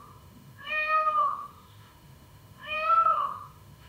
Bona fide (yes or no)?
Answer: no